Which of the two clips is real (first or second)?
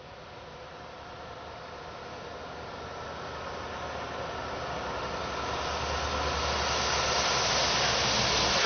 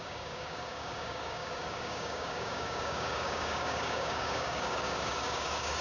first